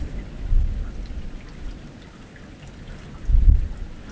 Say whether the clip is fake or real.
real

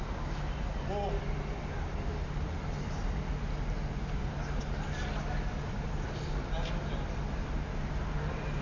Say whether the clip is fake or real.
real